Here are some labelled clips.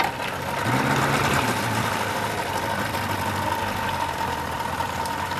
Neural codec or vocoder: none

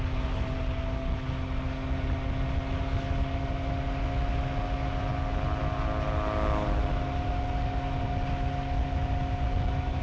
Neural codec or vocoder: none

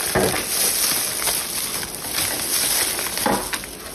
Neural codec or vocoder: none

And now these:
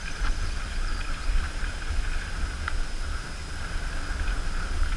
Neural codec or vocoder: none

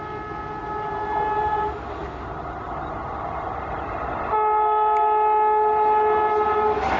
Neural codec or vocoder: none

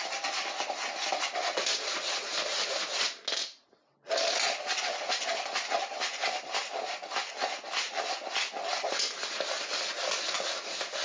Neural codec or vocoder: none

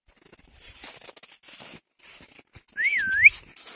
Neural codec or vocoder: none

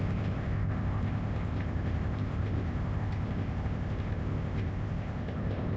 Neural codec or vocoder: codec, ZipCodec